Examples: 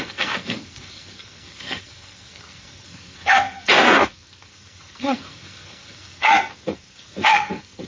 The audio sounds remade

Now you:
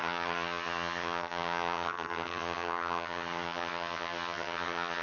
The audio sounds remade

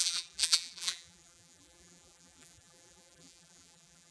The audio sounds remade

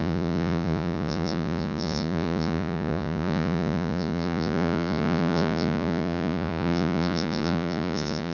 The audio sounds remade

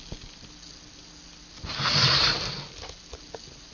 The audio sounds recorded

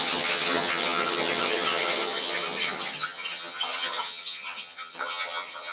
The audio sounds remade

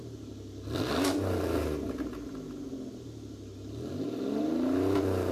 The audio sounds recorded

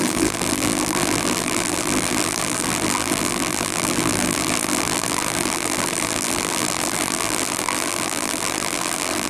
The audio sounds remade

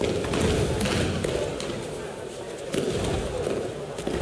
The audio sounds recorded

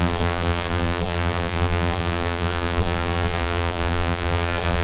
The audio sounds remade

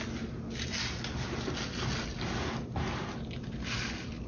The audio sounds recorded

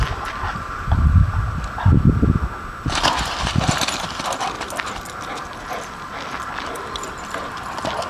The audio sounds recorded